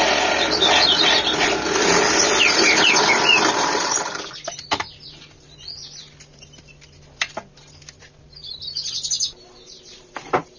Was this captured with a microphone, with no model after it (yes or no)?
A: yes